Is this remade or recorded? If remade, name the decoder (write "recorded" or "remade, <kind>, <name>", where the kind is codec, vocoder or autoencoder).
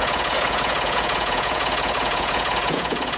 remade, vocoder, Vocos